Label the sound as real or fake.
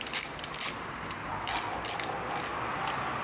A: real